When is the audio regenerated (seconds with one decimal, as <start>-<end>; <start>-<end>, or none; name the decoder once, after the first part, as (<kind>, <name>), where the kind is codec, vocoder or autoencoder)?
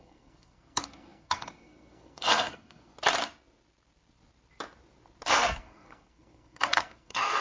0.0-2.9 (codec, SNAC); 5.3-7.4